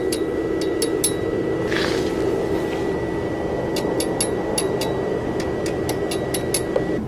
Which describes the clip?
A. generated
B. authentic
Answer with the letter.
B